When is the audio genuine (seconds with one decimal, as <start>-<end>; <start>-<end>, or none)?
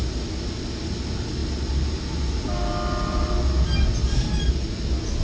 0.0-5.2